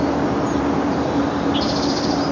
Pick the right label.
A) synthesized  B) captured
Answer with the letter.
B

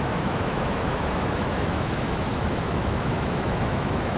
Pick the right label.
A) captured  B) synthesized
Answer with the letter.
B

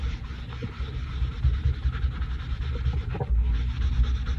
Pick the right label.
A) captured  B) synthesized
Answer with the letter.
A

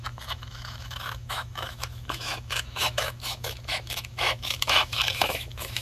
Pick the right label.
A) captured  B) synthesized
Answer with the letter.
B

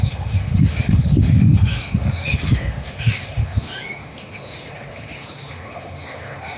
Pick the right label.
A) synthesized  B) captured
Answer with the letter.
A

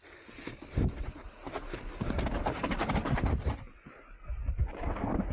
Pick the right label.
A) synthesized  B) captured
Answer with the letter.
B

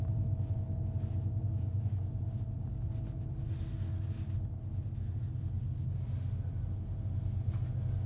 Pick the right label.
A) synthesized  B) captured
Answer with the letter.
B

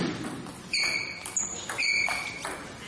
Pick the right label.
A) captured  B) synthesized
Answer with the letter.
A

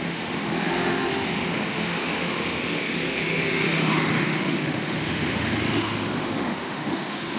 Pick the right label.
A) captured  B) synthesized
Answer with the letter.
B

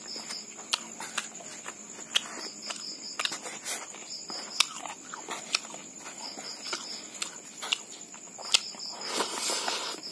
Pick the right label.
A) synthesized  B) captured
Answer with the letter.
B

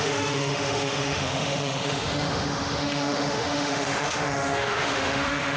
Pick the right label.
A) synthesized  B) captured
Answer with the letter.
A